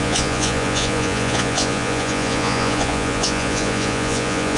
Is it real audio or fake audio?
fake